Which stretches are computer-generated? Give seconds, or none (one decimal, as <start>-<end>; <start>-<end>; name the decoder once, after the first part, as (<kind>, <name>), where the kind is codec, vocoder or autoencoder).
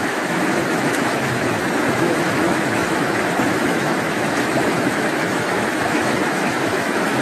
0.0-7.2 (autoencoder, DAC-VAE)